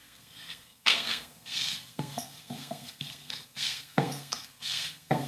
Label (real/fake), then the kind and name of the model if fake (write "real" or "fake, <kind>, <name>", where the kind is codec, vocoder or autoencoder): fake, codec, SNAC